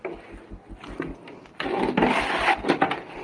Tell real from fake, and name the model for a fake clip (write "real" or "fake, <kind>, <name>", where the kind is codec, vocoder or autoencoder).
real